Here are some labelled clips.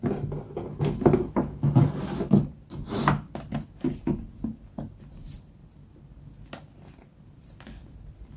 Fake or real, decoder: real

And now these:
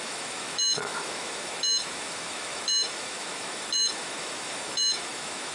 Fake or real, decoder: fake, autoencoder, DAC-VAE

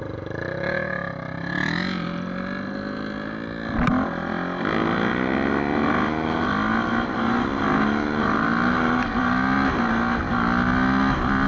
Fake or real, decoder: real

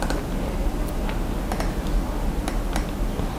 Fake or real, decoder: real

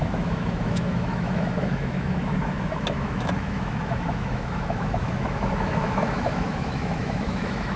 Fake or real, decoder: fake, autoencoder, DAC-VAE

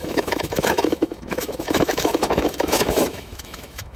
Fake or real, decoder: fake, autoencoder, DAC-VAE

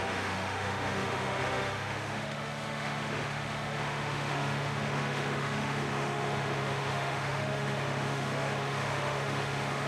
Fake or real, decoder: fake, autoencoder, DAC-VAE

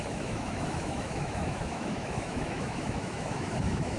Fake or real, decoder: fake, autoencoder, DAC-VAE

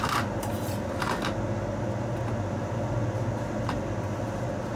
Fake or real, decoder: real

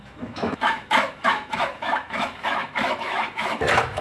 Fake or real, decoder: fake, autoencoder, DAC-VAE